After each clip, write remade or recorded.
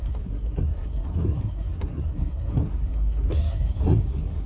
remade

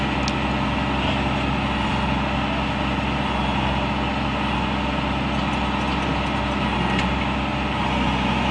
recorded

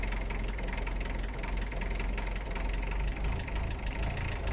recorded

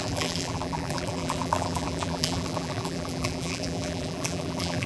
remade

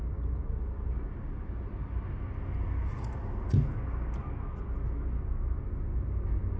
recorded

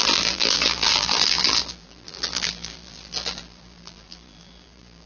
remade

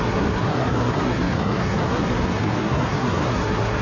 remade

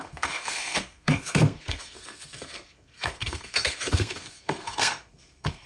remade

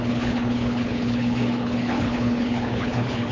remade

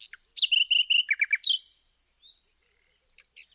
recorded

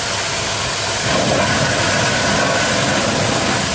recorded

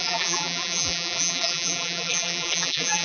remade